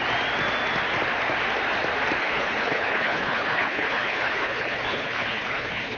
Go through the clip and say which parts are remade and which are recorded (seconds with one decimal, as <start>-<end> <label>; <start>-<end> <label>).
0.0-2.2 recorded; 2.2-6.0 remade